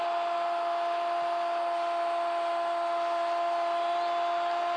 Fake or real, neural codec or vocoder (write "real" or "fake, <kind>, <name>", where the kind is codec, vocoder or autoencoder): real